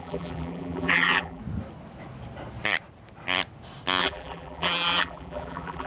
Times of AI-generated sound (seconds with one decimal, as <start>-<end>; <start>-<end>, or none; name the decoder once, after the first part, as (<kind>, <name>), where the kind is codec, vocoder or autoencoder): 0.0-1.4 (vocoder, BigVGAN v2); 4.0-5.9